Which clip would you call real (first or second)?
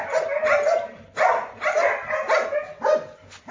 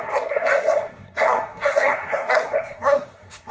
first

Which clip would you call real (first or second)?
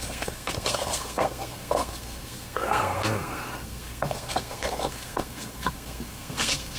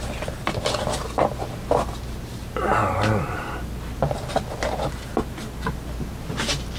second